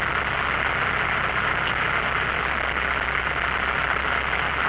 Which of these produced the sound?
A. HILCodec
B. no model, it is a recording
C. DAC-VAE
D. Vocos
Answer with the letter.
B